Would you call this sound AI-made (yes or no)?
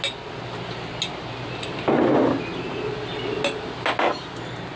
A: no